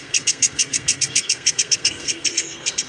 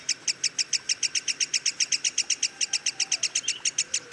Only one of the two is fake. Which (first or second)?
first